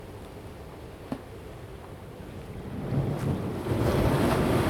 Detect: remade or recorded recorded